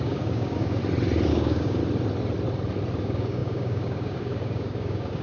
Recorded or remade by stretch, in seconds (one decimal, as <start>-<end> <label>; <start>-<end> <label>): 0.0-0.8 remade; 0.8-1.3 recorded; 1.3-1.8 remade; 1.8-3.0 recorded; 3.0-5.2 remade

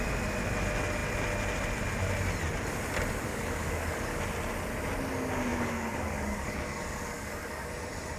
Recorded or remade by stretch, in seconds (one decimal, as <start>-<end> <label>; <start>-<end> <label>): 0.0-3.3 recorded; 3.3-4.2 remade; 4.2-5.5 recorded; 5.5-7.7 remade; 7.7-8.2 recorded

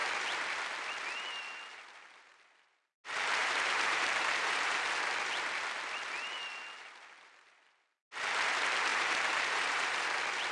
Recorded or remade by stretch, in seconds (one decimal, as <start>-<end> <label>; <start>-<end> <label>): 0.0-3.4 recorded; 3.4-4.9 remade; 4.9-8.9 recorded; 8.9-10.0 remade; 10.0-10.5 recorded

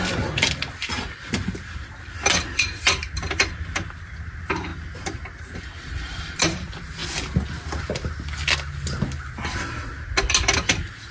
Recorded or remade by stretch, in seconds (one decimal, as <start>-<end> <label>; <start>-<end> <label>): 0.0-4.7 remade; 4.7-5.6 recorded; 5.6-7.0 remade; 7.0-11.1 recorded

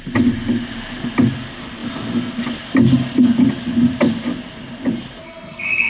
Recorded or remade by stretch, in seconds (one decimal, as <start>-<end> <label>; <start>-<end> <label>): 0.0-5.2 recorded; 5.2-5.9 remade